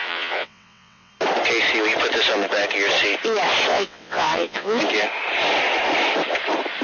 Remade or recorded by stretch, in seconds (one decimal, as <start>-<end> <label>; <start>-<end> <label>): 0.0-1.1 remade; 1.1-3.7 recorded; 3.7-4.8 remade; 4.8-6.8 recorded

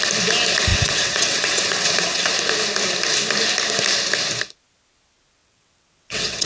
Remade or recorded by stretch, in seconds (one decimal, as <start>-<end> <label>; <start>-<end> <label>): 0.0-0.7 recorded; 0.7-2.3 remade; 2.3-5.4 recorded; 5.4-6.5 remade

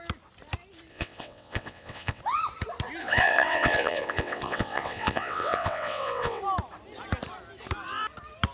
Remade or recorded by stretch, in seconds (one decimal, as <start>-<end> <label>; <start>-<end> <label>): 0.0-0.9 recorded; 0.9-2.2 remade; 2.2-3.0 recorded; 3.0-6.4 remade; 6.4-8.5 recorded

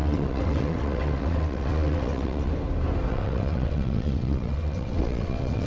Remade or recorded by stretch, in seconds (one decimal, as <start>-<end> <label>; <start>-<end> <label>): 0.0-2.5 remade; 2.5-3.1 recorded; 3.1-5.7 remade

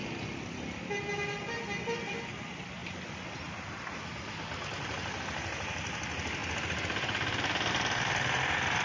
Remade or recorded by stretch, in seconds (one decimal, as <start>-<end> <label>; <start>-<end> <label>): 0.0-8.8 recorded

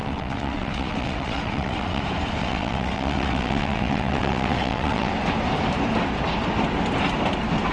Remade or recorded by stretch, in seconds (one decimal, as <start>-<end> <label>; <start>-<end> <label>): 0.0-2.0 remade; 2.0-2.4 recorded; 2.4-5.1 remade; 5.1-7.7 recorded

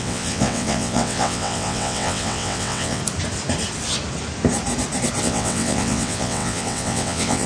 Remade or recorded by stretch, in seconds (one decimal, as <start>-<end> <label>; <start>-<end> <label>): 0.0-3.0 remade; 3.0-5.2 recorded; 5.2-7.5 remade